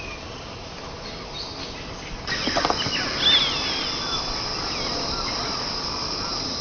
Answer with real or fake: real